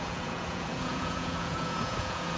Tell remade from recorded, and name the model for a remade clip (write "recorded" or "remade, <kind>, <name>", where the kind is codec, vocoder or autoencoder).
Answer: remade, vocoder, Vocos